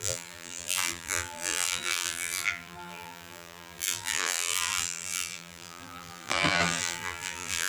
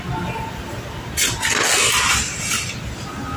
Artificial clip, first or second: first